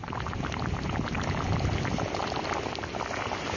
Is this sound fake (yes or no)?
no